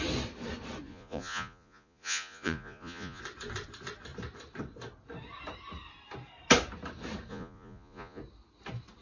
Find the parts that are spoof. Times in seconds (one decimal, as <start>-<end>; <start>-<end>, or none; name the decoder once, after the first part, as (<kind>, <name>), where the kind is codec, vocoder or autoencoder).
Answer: 0.9-3.2 (vocoder, Vocos); 7.3-8.2